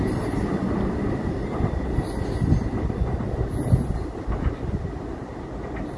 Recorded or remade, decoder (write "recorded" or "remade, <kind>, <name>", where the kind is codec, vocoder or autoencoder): recorded